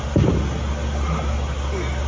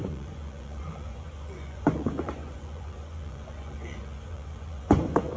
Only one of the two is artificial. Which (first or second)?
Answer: second